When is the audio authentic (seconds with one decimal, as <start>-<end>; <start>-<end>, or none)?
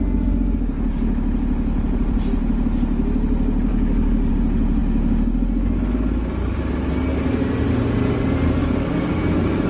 0.0-3.7; 4.3-8.6